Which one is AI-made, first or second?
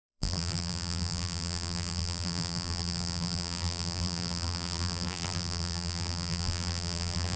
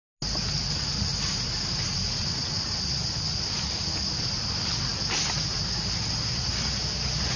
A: first